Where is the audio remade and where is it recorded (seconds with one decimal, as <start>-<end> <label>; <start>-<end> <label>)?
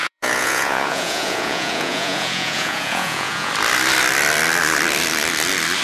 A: 0.0-3.5 remade; 3.5-5.8 recorded